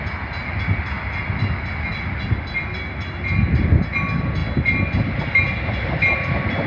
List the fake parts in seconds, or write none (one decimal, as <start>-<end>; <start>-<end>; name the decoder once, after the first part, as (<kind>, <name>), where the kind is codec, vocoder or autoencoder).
none